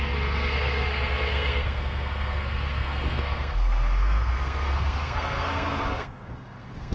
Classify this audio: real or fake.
fake